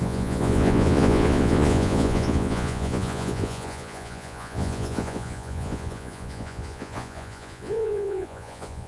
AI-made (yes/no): yes